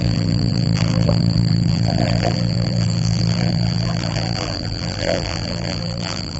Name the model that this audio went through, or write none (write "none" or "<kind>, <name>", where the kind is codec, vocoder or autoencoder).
vocoder, BigVGAN v2